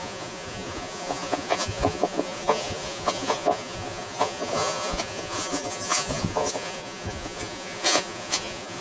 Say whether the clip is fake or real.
fake